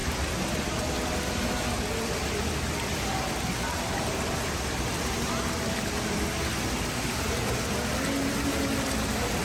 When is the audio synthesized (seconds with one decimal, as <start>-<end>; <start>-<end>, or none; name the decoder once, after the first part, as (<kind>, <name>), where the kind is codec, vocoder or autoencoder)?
none